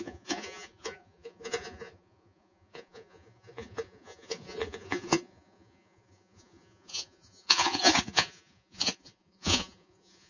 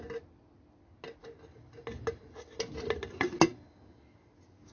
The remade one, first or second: first